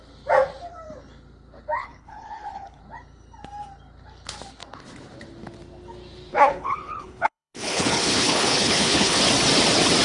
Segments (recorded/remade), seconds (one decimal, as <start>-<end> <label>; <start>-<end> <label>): 0.0-1.8 recorded; 1.8-2.8 remade; 2.8-6.3 recorded; 6.3-9.2 remade; 9.2-10.0 recorded